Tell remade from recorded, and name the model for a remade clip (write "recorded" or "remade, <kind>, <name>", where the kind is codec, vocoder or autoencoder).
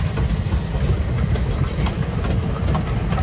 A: recorded